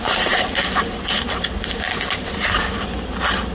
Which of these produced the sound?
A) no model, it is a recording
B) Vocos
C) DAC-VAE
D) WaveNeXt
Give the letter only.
A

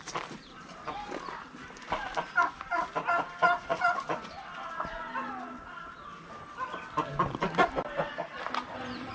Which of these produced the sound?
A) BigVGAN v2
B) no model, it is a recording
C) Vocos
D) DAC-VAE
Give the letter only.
A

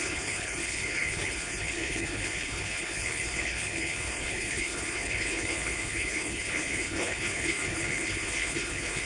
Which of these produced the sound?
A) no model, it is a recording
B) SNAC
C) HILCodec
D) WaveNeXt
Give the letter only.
C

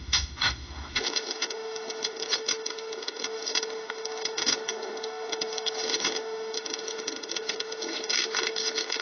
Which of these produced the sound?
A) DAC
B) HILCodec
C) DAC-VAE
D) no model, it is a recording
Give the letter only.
C